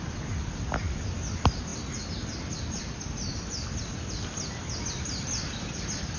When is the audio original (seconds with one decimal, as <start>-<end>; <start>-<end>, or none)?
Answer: 0.0-6.2